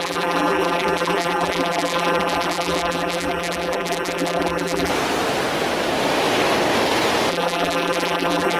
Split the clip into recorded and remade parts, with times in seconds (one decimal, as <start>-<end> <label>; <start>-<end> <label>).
0.0-4.9 remade; 4.9-7.3 recorded; 7.3-8.6 remade